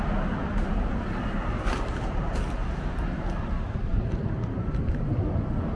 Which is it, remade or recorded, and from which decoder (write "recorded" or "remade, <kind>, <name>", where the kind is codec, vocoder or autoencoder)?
recorded